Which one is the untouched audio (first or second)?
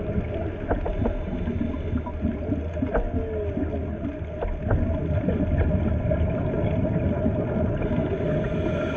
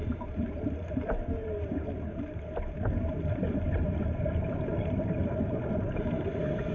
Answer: first